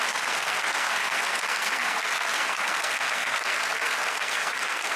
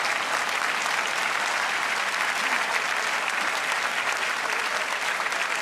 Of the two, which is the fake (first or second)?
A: first